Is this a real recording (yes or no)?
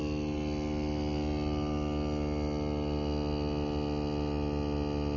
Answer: yes